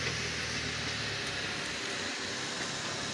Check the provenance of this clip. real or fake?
real